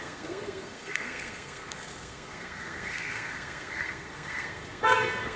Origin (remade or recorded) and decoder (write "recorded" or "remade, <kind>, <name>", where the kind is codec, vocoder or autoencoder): remade, codec, SNAC